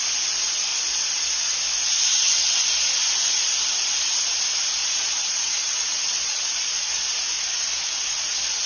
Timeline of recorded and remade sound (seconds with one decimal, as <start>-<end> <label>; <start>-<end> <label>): 0.0-4.8 recorded; 4.8-6.9 remade; 6.9-8.7 recorded